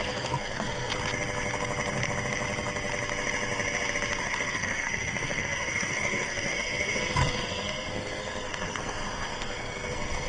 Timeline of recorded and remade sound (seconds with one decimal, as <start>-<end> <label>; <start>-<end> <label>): 0.0-0.9 remade; 0.9-4.2 recorded; 4.2-10.3 remade